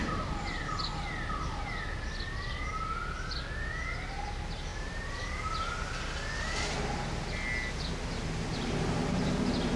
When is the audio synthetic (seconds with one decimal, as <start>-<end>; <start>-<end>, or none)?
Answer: 0.0-0.6; 4.7-5.4; 8.5-9.3